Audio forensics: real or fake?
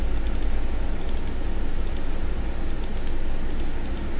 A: real